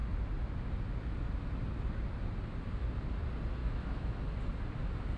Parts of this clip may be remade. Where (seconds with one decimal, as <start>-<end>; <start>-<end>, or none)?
3.6-4.2